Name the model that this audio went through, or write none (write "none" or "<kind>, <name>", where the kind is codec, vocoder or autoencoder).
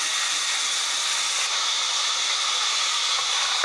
none